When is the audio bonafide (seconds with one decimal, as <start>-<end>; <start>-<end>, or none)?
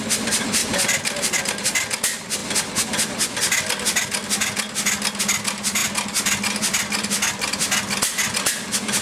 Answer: 0.0-9.0